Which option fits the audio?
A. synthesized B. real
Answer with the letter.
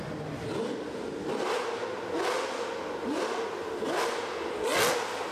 B